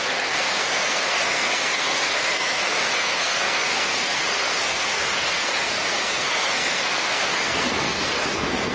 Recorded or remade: remade